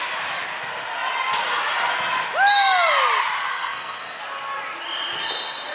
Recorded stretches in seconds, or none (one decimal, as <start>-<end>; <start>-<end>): 0.0-3.5; 4.2-5.7